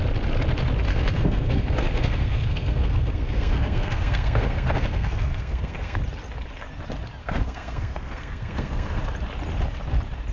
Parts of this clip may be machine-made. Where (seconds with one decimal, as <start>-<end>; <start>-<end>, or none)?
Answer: 0.9-6.0; 7.2-9.0

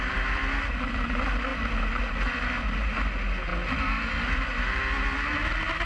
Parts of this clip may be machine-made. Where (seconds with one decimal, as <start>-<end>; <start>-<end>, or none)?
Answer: none

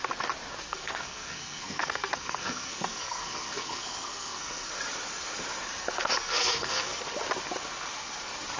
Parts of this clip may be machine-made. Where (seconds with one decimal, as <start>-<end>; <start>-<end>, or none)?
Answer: 0.6-4.7; 6.2-7.0